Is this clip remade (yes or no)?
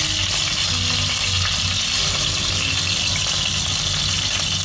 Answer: no